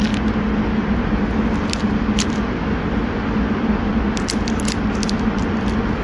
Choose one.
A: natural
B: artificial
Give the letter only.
A